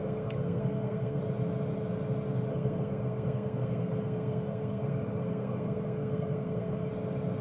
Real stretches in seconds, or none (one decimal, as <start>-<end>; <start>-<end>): 1.2-2.5; 6.9-7.4